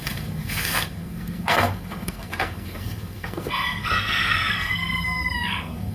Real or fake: fake